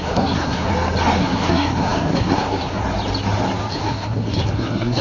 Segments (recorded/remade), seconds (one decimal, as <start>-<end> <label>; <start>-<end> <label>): 0.0-0.7 remade; 0.7-1.2 recorded; 1.2-2.8 remade; 2.8-3.7 recorded; 3.7-5.0 remade